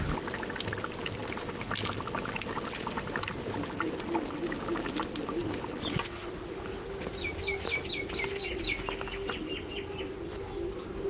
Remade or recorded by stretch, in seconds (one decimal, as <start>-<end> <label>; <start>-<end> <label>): 0.0-11.1 recorded